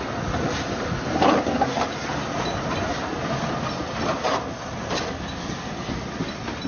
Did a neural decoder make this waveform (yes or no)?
no